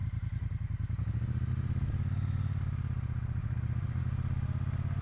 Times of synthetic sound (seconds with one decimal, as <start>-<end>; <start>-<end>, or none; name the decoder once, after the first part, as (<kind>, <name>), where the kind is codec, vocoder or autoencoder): 3.4-4.0 (vocoder, BigVGAN v2)